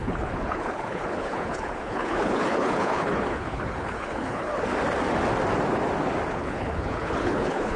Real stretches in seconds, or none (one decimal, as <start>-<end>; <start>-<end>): 4.5-6.3